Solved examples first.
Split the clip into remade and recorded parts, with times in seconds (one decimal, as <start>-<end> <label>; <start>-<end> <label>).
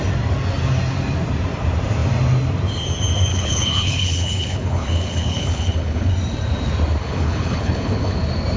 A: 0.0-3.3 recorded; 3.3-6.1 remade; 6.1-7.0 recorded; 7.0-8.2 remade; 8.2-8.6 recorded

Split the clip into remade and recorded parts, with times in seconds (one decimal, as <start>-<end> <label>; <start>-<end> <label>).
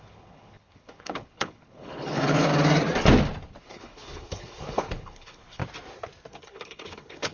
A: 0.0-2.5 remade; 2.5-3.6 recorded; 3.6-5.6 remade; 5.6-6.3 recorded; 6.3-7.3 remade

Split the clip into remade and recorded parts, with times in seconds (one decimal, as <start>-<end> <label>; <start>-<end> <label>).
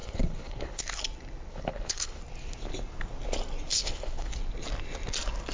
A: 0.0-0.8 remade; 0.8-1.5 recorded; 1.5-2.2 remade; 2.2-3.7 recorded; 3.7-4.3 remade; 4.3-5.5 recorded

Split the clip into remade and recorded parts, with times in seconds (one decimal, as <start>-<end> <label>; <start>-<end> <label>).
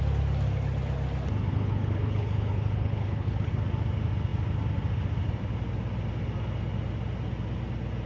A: 0.0-1.5 recorded; 1.5-3.5 remade; 3.5-8.1 recorded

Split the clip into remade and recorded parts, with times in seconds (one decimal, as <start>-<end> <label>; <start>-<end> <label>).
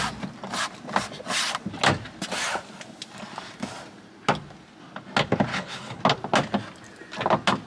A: 0.0-5.5 recorded; 5.5-6.0 remade; 6.0-7.7 recorded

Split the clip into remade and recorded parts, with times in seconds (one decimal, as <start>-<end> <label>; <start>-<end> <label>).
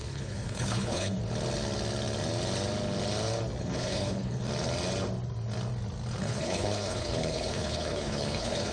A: 0.0-1.2 remade; 1.2-3.6 recorded; 3.6-4.4 remade; 4.4-6.2 recorded; 6.2-8.7 remade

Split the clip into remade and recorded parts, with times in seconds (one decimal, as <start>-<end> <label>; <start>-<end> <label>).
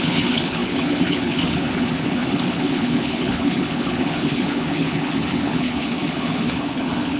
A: 0.0-7.2 remade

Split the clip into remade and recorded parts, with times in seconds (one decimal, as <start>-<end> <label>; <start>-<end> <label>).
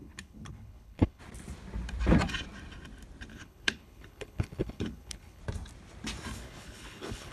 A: 0.0-1.2 remade; 1.2-3.3 recorded; 3.3-5.4 remade; 5.4-6.4 recorded; 6.4-7.3 remade